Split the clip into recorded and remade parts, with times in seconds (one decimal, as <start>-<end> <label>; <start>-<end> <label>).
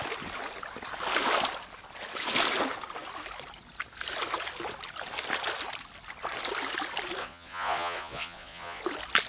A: 0.0-7.2 recorded; 7.2-8.8 remade; 8.8-9.3 recorded